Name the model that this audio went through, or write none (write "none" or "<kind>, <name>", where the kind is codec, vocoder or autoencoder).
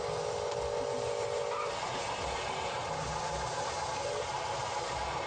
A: none